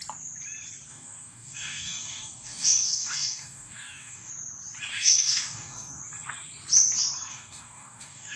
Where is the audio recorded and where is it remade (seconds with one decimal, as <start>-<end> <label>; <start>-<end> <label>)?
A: 0.0-0.9 recorded; 0.9-4.3 remade; 4.3-4.9 recorded; 4.9-6.0 remade; 6.0-7.3 recorded; 7.3-8.4 remade

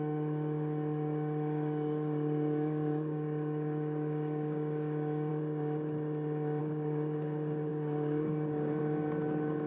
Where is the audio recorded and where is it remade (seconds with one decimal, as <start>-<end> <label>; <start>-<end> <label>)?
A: 0.0-5.3 remade; 5.3-6.6 recorded; 6.6-9.7 remade

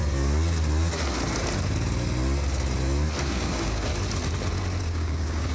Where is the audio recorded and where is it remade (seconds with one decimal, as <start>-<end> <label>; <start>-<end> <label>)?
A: 0.0-3.3 recorded; 3.3-3.9 remade; 3.9-4.8 recorded; 4.8-5.5 remade

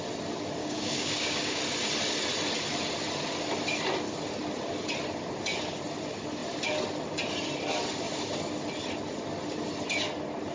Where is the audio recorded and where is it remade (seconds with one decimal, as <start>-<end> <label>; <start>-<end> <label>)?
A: 0.0-0.6 recorded; 0.6-1.6 remade; 1.6-10.5 recorded